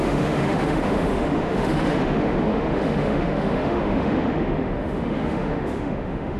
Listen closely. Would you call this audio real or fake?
fake